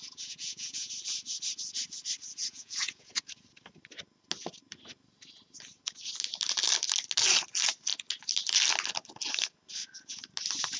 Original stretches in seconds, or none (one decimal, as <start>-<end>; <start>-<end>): 0.9-2.4; 3.1-10.8